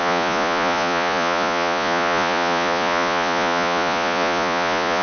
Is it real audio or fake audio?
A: fake